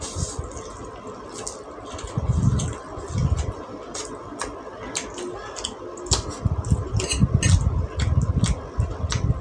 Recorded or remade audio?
recorded